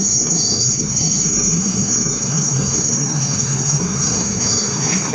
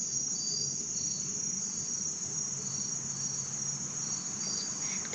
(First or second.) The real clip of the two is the second